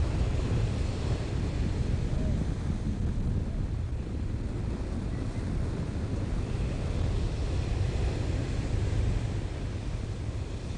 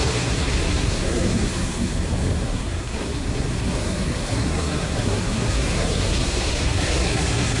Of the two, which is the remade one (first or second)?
second